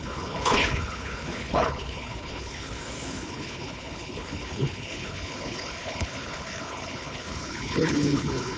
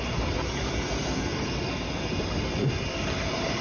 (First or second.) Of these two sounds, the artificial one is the first